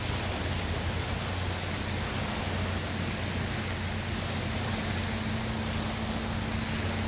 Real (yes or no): yes